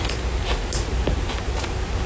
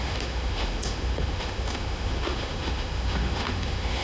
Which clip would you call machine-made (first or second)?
second